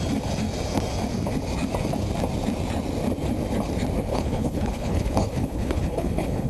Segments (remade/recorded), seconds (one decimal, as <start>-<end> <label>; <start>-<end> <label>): 0.0-4.1 recorded; 4.1-6.5 remade